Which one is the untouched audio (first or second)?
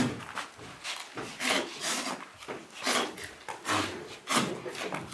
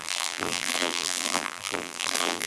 first